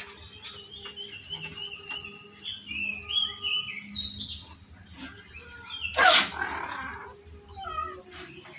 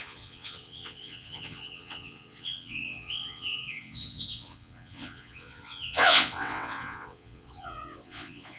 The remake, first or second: second